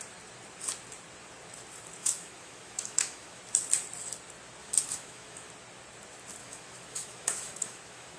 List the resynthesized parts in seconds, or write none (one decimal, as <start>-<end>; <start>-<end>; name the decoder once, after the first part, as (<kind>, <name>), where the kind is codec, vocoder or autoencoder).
2.0-3.4 (autoencoder, DAC-VAE); 4.6-5.5; 6.4-8.2